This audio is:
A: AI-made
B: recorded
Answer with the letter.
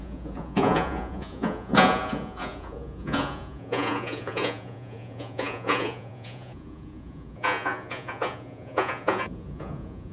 A